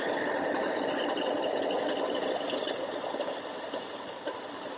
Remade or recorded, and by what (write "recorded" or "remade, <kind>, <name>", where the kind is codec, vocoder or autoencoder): recorded